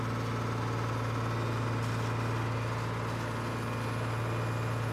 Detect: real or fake real